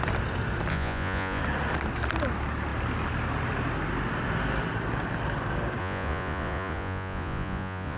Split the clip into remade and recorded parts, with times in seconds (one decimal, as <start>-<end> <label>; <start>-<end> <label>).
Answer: 0.0-0.7 recorded; 0.7-1.4 remade; 1.4-5.8 recorded; 5.8-8.0 remade